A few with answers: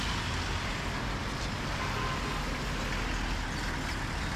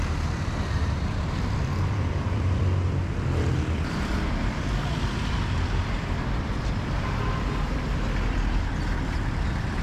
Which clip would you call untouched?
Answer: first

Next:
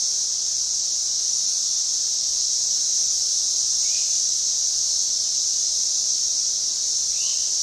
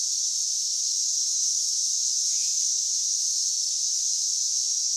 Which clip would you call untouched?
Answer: first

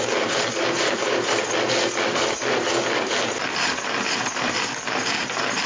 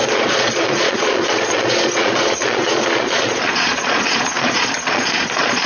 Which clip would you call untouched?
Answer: first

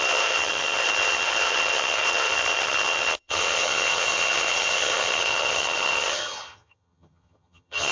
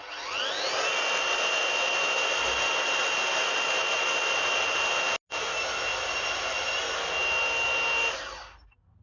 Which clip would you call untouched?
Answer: second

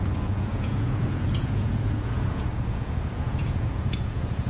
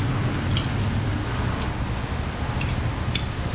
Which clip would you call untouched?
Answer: second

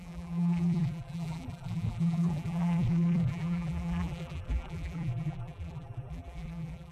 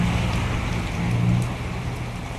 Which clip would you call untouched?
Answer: second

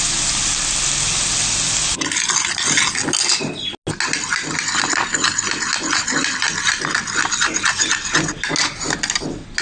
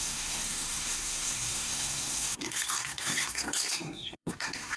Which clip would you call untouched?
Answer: first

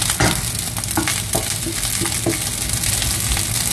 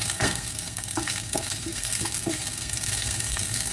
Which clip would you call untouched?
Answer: first